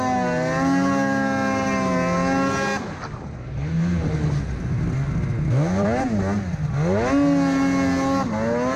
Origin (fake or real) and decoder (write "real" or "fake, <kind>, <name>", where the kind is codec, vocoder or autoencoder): real